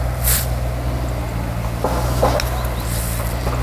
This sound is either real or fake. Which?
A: real